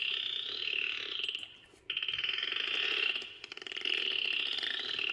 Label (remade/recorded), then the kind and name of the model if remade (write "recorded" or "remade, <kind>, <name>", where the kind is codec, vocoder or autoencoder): recorded